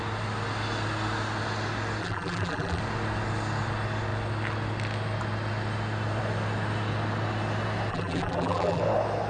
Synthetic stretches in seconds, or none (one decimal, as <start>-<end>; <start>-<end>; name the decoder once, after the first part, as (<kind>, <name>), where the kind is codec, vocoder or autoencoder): 2.0-2.8 (vocoder, BigVGAN v2); 7.9-8.8